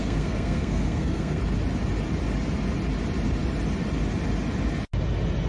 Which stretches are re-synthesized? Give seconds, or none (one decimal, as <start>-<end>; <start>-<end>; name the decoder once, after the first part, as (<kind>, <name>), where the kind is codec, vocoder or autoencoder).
0.0-1.4 (codec, SNAC)